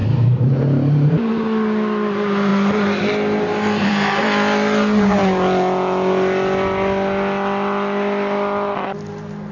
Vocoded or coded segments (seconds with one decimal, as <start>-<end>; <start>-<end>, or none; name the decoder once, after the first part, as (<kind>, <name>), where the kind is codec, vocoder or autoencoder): 0.0-1.3 (vocoder, BigVGAN v2)